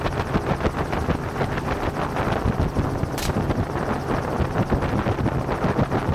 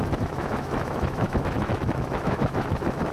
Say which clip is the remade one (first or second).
second